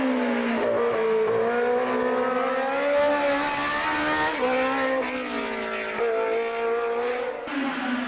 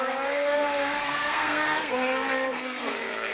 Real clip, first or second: first